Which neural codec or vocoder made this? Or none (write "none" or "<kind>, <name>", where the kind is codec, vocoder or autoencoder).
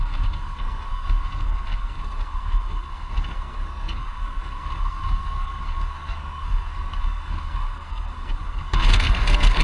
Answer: codec, SNAC